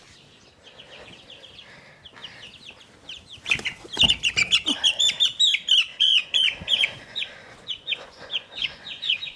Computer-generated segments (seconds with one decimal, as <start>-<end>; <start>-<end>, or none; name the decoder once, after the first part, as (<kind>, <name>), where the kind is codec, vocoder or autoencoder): 5.9-9.4 (vocoder, Vocos)